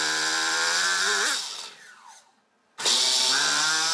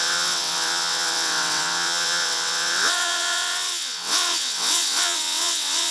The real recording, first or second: first